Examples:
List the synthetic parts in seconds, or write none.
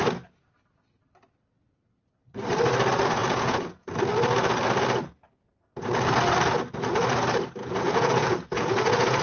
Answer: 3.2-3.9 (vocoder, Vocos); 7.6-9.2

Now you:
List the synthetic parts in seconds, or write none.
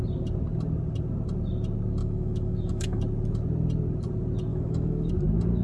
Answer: 2.0-3.0 (autoencoder, DAC-VAE); 4.5-5.1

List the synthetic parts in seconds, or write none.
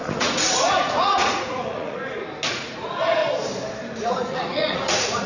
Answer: 0.0-2.0 (vocoder, Vocos); 2.5-3.2; 4.1-5.3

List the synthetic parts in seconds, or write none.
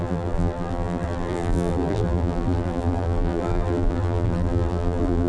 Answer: 0.0-5.3 (vocoder, BigVGAN v2)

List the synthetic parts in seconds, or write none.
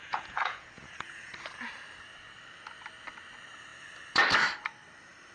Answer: 0.0-1.3 (vocoder, Vocos)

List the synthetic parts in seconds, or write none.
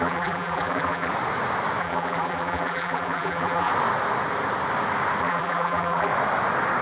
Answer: 0.0-1.1 (vocoder, BigVGAN v2); 1.8-3.7; 5.2-6.1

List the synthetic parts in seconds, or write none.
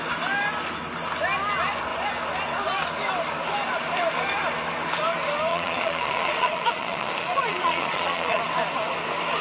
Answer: 5.5-8.4 (vocoder, Vocos)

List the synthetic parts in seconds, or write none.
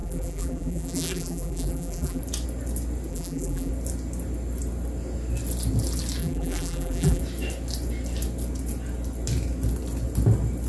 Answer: 0.0-2.2 (vocoder, BigVGAN v2); 3.1-3.7; 6.2-7.2